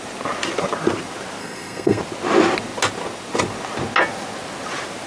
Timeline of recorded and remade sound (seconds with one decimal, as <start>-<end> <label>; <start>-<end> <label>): 0.0-1.4 recorded; 1.4-2.0 remade; 2.0-5.1 recorded